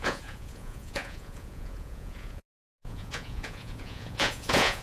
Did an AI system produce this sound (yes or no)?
yes